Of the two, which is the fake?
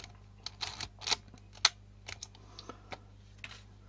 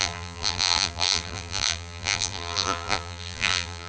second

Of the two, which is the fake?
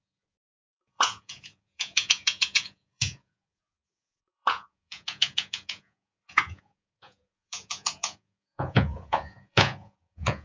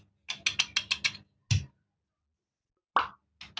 first